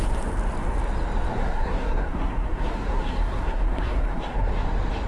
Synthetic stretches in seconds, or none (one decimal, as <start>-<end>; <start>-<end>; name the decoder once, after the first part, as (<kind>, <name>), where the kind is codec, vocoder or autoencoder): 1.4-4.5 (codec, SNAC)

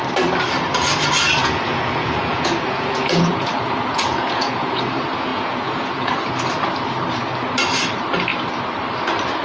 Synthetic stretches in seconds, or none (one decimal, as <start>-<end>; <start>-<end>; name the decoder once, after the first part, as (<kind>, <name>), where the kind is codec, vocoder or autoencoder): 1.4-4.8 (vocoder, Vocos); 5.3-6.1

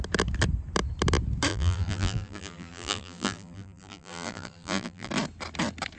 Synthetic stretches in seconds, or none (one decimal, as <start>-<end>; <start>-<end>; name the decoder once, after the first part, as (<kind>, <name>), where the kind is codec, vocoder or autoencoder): 1.5-5.1 (vocoder, BigVGAN v2)

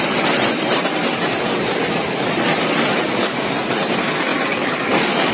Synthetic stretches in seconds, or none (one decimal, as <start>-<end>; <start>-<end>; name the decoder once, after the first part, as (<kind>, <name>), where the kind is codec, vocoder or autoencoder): 0.0-2.7 (vocoder, BigVGAN v2); 3.4-5.3